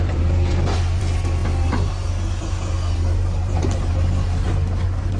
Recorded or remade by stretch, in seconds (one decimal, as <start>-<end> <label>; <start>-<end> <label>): 0.0-5.2 recorded